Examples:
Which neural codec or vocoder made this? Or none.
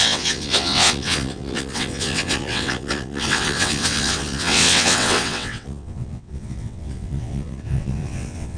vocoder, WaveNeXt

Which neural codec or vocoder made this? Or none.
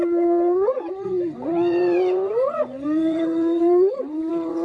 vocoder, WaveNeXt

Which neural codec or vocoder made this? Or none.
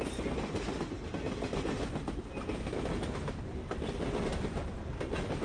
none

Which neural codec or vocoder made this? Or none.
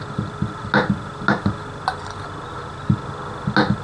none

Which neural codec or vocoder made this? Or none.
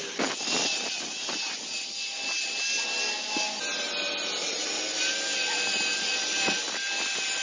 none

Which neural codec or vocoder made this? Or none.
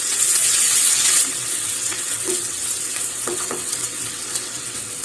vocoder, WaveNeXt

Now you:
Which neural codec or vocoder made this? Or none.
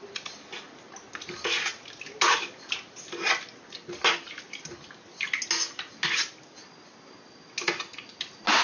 none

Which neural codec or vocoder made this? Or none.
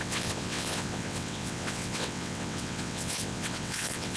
vocoder, WaveNeXt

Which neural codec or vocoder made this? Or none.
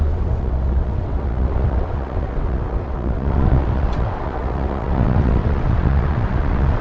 vocoder, WaveNeXt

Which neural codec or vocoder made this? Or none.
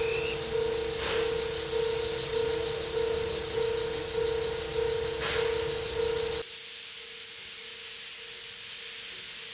none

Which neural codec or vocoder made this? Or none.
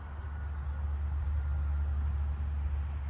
none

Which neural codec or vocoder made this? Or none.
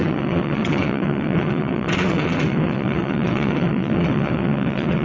vocoder, WaveNeXt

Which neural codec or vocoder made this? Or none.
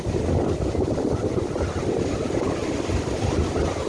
none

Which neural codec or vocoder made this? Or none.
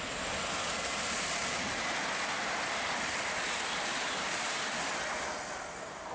none